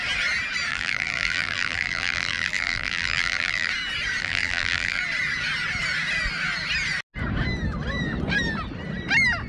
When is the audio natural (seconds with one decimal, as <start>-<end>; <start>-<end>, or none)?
0.0-0.7; 3.7-4.2; 5.0-9.5